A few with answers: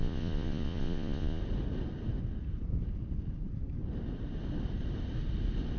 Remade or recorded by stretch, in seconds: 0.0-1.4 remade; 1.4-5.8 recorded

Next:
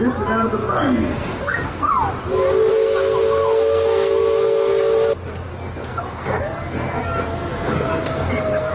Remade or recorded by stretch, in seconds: 0.0-0.6 recorded; 0.6-1.9 remade; 1.9-2.7 recorded; 2.7-4.7 remade; 4.7-5.5 recorded; 5.5-7.0 remade; 7.0-7.5 recorded; 7.5-8.7 remade